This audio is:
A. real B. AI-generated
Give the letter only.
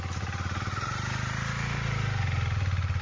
A